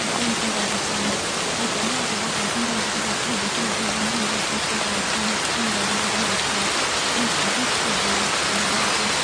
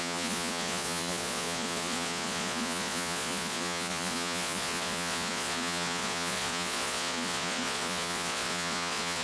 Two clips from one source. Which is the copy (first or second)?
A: second